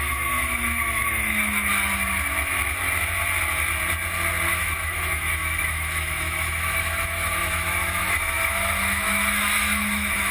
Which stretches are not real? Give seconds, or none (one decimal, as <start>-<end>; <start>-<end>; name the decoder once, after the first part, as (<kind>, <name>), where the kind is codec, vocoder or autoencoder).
0.0-1.7 (autoencoder, DAC-VAE); 4.6-10.3